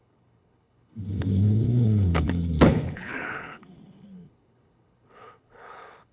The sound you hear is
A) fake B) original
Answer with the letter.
A